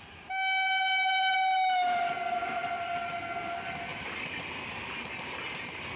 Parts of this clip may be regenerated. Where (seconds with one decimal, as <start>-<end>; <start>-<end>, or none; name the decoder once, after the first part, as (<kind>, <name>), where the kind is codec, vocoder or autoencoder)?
none